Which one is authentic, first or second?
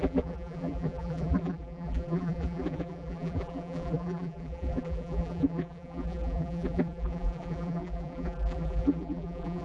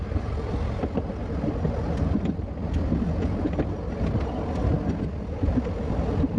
second